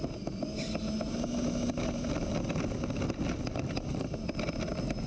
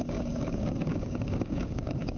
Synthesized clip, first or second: second